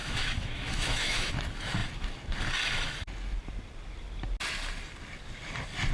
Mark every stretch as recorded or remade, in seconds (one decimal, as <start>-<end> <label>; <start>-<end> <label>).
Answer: 0.0-1.3 remade; 1.3-5.9 recorded